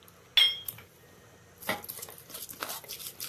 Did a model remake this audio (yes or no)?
no